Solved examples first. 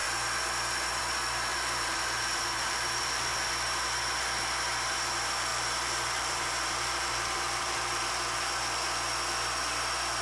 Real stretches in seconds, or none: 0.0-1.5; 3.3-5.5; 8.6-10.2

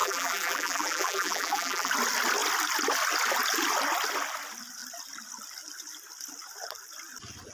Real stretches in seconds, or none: 1.9-7.5

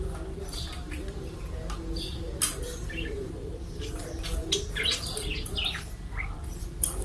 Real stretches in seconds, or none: 4.4-5.7

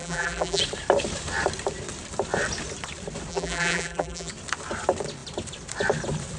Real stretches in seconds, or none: 0.6-3.3; 4.3-6.4